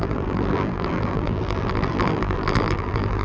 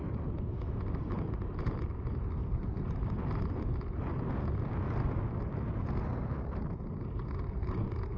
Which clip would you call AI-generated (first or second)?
first